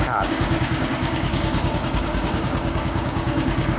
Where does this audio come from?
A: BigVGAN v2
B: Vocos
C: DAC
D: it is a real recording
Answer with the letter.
C